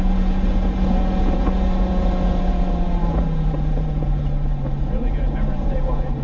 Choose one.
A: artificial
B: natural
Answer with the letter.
A